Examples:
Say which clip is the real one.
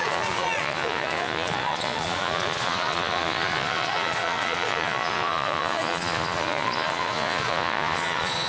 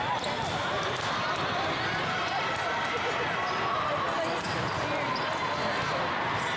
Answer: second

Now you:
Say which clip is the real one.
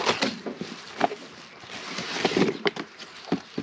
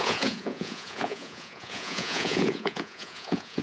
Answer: first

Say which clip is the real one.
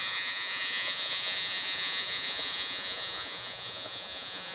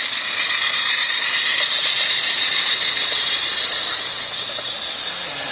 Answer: second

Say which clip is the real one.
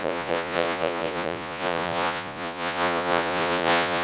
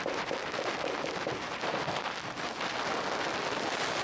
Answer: second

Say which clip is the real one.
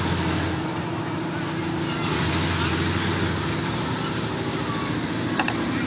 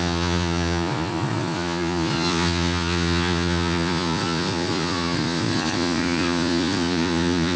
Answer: first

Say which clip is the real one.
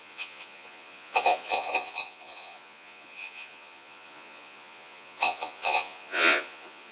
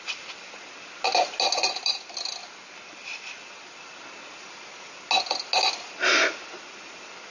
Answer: second